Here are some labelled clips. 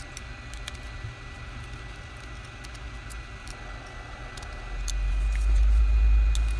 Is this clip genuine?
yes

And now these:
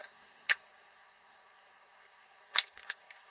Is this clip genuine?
no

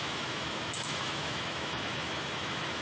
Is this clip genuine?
no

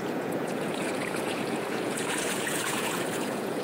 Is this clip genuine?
no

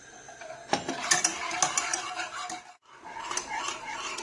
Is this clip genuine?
yes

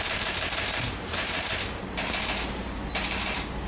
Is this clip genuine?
no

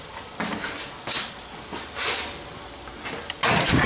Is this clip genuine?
yes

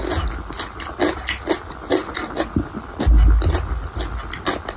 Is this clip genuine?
yes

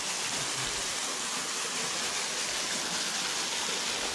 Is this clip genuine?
yes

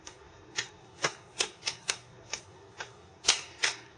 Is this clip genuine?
no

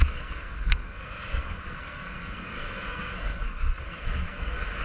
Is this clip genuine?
no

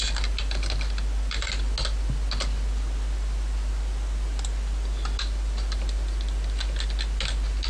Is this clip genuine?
yes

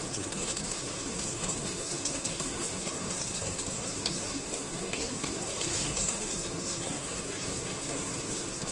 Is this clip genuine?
no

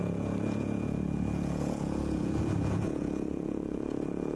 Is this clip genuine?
no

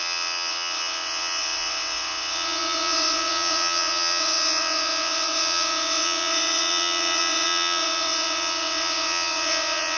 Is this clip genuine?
no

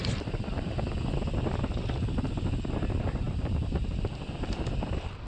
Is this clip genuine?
yes